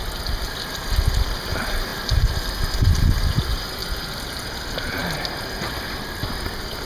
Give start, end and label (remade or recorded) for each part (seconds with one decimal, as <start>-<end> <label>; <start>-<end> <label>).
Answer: 0.0-6.9 recorded